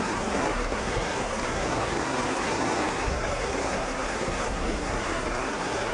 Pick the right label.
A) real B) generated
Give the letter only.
B